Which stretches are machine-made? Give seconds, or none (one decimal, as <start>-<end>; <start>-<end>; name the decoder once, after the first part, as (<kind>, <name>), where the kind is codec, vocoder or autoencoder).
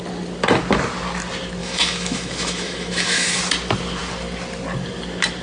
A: 1.6-3.4 (autoencoder, DAC-VAE)